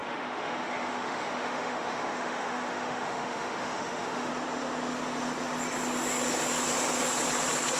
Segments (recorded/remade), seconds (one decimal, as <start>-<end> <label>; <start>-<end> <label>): 0.0-4.3 remade; 4.3-7.8 recorded